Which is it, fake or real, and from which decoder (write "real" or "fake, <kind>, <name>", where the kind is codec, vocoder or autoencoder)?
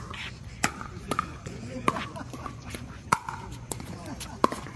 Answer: fake, vocoder, Vocos